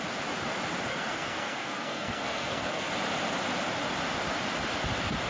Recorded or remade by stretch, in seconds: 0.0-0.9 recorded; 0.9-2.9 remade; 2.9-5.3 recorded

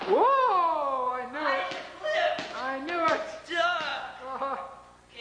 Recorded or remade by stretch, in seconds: 0.0-5.2 recorded